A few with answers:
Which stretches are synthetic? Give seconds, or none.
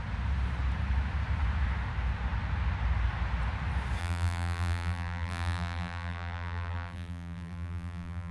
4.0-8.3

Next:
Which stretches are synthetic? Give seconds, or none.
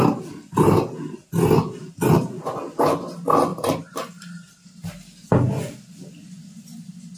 3.5-4.9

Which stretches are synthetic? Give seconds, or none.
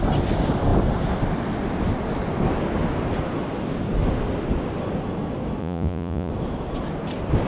5.6-6.3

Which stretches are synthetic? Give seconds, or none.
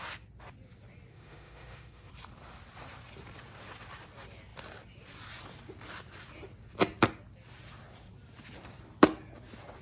1.1-2.1